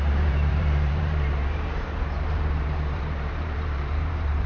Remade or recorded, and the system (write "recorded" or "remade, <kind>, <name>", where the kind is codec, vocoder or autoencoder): remade, vocoder, BigVGAN v2